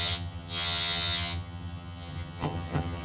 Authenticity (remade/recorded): remade